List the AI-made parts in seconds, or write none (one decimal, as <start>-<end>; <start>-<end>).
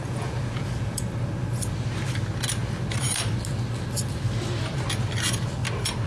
0.0-1.0